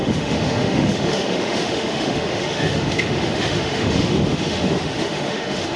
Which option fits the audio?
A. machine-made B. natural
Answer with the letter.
A